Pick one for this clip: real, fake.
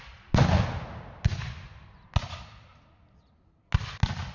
real